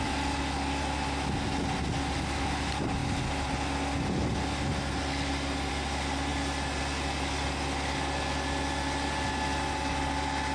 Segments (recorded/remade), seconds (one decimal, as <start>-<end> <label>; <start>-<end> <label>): 0.0-10.5 recorded